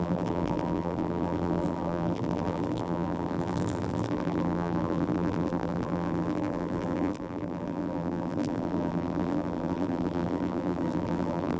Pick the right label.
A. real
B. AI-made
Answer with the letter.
B